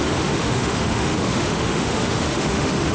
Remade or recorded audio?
remade